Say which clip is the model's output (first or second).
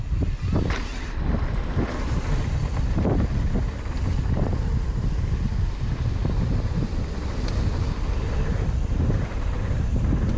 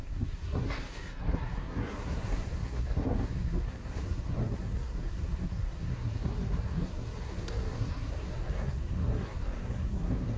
second